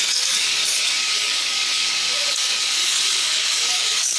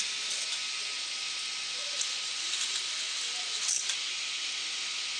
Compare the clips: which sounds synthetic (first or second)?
first